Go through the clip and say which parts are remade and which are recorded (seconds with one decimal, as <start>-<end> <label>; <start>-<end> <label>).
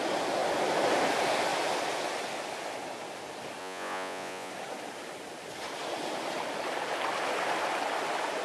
0.0-3.6 recorded; 3.6-4.5 remade; 4.5-8.4 recorded